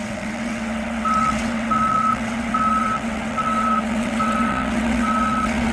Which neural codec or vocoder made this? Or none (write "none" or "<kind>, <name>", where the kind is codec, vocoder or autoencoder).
vocoder, WaveNeXt